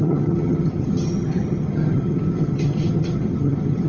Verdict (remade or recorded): remade